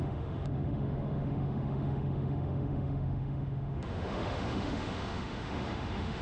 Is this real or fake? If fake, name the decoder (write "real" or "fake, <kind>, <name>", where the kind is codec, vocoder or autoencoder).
fake, autoencoder, DAC-VAE